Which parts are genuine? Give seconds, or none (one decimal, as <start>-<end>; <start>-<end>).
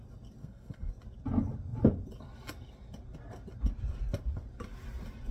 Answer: 0.0-0.4; 0.9-5.3